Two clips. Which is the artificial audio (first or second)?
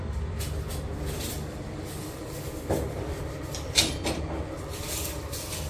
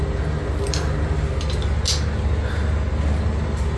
first